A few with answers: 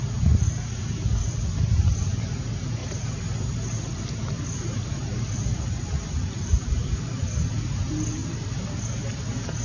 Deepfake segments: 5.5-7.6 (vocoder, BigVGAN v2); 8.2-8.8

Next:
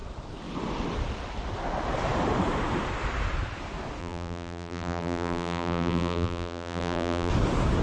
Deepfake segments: 4.0-7.3 (vocoder, BigVGAN v2)

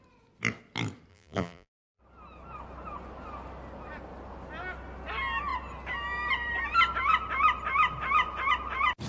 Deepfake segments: 1.1-2.0 (vocoder, BigVGAN v2)

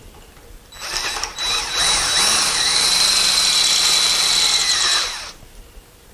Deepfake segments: 1.3-3.5 (vocoder, BigVGAN v2); 4.6-5.6

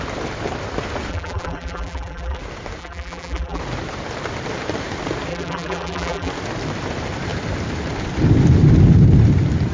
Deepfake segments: 1.1-2.4 (vocoder, BigVGAN v2); 2.8-3.6; 5.3-6.3

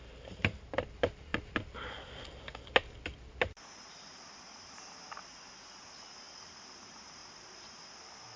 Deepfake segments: none

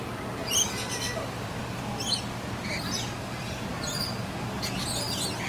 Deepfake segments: none